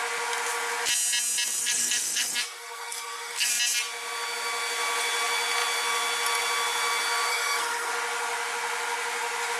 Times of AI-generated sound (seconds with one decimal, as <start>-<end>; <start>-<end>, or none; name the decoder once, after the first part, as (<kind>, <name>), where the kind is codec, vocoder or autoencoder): 1.6-3.5 (codec, SNAC); 7.3-7.9